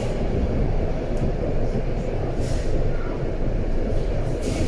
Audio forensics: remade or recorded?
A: remade